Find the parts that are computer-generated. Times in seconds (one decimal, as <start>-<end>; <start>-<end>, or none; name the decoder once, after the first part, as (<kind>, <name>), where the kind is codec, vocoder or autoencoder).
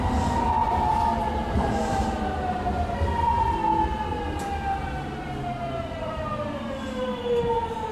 0.6-2.2 (vocoder, BigVGAN v2); 4.1-7.2